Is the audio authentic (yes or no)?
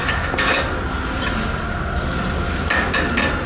yes